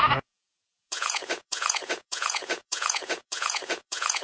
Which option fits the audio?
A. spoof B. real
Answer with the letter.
A